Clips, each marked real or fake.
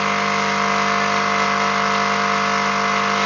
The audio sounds real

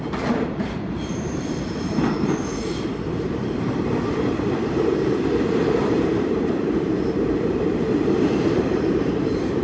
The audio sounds fake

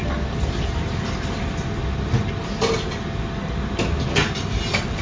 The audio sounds real